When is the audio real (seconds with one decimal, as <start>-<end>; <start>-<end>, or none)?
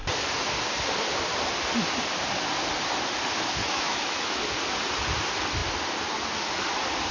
0.0-3.6; 4.4-7.1